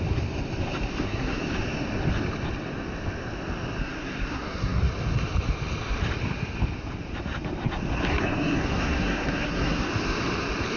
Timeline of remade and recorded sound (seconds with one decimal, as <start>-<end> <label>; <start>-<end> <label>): 0.0-0.9 recorded; 0.9-1.4 remade; 1.4-3.8 recorded; 3.8-4.8 remade; 4.8-8.1 recorded; 8.1-9.9 remade; 9.9-10.8 recorded